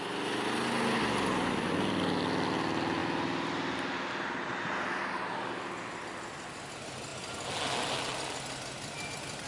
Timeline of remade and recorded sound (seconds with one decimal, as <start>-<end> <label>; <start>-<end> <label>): 0.0-9.5 recorded